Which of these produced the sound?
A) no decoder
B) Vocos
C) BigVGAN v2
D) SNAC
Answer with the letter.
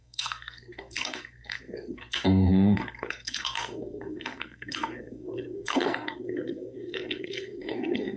D